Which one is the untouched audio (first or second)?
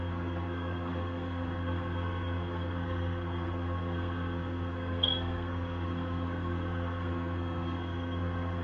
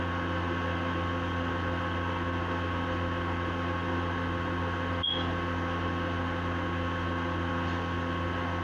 second